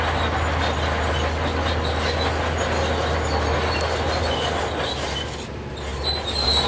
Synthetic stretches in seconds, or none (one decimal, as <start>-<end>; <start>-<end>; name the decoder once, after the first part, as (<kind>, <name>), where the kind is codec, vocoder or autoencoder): none